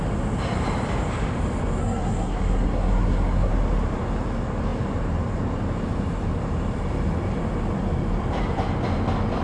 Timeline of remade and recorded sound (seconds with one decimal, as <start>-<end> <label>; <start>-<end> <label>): 0.0-1.8 recorded; 1.8-3.5 remade; 3.5-9.4 recorded